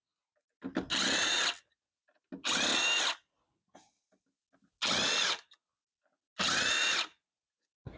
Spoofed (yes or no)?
no